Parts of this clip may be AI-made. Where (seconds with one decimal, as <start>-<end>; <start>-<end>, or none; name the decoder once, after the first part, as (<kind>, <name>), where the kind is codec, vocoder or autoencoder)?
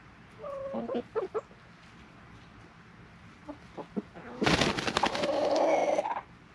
none